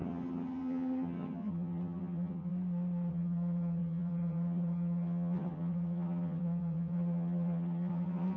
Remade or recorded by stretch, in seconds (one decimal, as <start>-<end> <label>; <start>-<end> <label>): 0.0-2.5 remade; 2.5-3.1 recorded; 3.1-8.4 remade

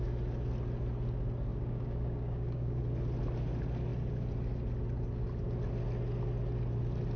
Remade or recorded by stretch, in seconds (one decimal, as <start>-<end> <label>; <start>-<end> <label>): 0.0-1.5 recorded; 1.5-2.8 remade; 2.8-7.2 recorded

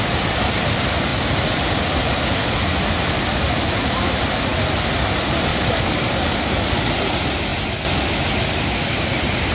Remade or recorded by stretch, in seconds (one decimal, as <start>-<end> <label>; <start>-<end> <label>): 0.0-5.5 recorded; 5.5-6.9 remade; 6.9-9.5 recorded